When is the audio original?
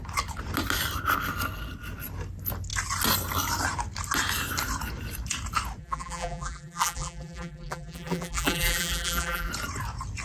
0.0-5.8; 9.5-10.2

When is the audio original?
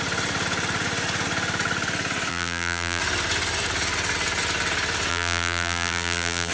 0.0-2.3; 3.0-5.1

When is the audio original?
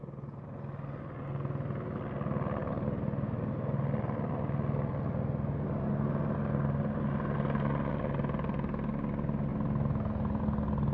0.0-10.9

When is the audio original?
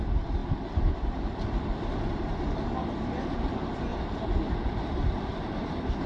0.0-3.9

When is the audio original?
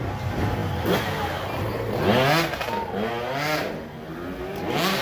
0.0-5.0